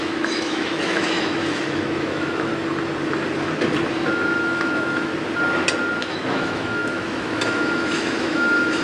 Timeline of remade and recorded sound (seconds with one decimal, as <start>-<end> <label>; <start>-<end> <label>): 0.0-2.5 remade; 2.5-4.1 recorded; 4.1-5.1 remade; 5.1-6.0 recorded; 6.0-8.8 remade